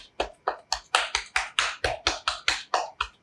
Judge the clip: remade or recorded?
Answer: recorded